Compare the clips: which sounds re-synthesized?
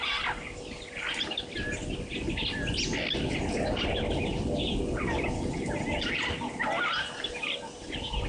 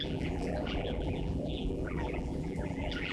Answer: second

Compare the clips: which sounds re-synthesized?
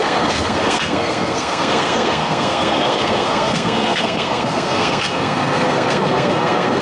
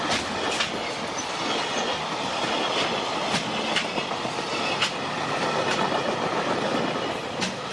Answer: first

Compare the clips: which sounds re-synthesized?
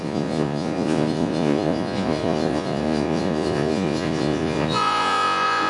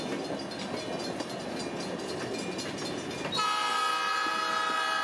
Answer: first